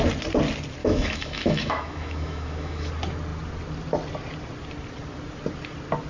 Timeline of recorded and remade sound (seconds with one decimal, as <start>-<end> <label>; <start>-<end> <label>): 0.0-0.8 recorded; 0.8-2.9 remade; 2.9-6.1 recorded